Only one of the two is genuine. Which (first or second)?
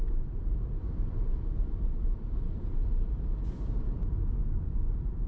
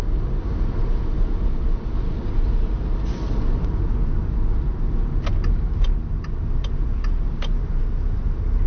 second